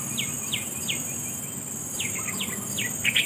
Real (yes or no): yes